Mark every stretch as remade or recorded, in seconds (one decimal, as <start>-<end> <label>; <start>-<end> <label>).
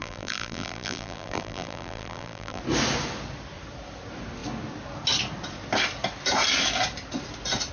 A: 0.0-2.6 remade; 2.6-7.7 recorded